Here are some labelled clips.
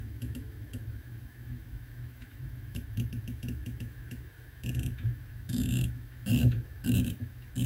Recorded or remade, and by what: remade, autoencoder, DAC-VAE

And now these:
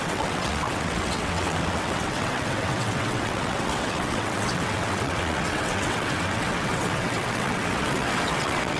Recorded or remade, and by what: remade, vocoder, WaveNeXt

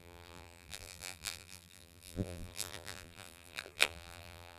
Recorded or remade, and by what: remade, vocoder, BigVGAN v2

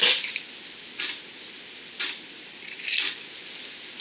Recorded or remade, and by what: recorded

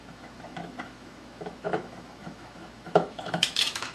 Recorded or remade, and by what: remade, autoencoder, DAC-VAE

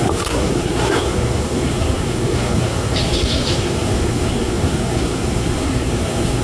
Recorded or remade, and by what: remade, codec, SNAC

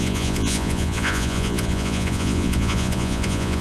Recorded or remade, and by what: remade, vocoder, Vocos